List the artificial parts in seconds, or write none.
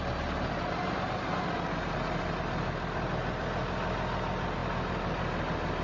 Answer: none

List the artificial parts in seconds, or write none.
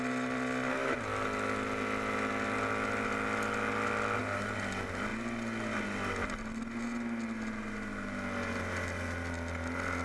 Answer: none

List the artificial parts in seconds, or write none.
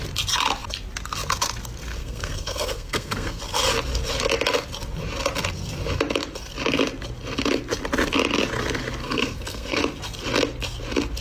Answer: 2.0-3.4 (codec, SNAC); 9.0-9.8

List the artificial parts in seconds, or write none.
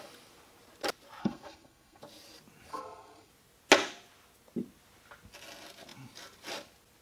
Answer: 1.2-2.0 (codec, SNAC); 2.7-3.3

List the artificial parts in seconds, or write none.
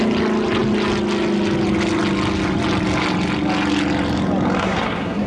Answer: 4.6-5.3 (codec, SNAC)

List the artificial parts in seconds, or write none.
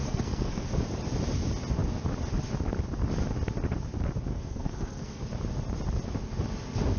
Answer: 0.0-0.8 (codec, SNAC); 4.3-5.2